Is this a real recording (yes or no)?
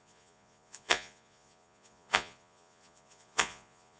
no